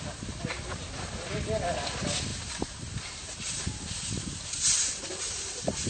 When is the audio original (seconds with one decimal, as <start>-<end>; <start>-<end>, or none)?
0.0-2.3